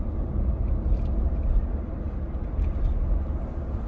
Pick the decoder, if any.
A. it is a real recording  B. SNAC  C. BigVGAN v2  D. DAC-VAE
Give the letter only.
A